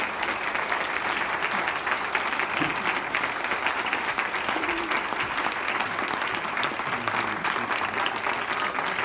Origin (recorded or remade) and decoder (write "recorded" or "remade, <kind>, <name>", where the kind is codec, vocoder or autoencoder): recorded